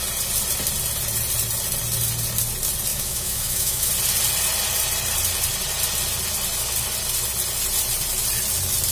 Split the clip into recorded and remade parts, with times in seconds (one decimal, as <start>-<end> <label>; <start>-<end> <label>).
0.0-2.9 recorded; 2.9-3.9 remade; 3.9-8.9 recorded